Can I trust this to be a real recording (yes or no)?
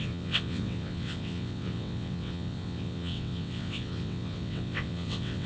no